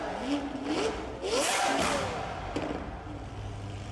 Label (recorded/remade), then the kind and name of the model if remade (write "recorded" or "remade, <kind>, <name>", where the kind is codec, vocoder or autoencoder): recorded